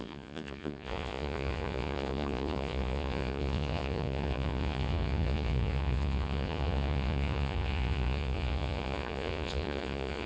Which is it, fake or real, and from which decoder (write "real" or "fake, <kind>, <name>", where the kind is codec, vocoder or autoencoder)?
fake, vocoder, Vocos